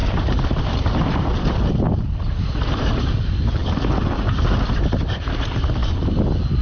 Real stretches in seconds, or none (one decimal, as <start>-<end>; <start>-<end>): 3.0-6.6